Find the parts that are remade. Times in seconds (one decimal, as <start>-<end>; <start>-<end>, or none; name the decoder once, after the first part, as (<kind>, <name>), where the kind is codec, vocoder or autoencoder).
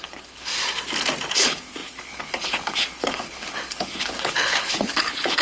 0.0-0.5 (codec, HILCodec); 1.3-5.4